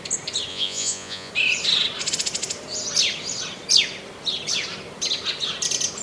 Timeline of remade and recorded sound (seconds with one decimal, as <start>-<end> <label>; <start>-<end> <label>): 0.0-0.5 recorded; 0.5-1.3 remade; 1.3-6.0 recorded